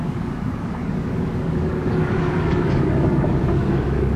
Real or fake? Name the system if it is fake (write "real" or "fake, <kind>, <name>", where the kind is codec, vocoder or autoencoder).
fake, codec, DAC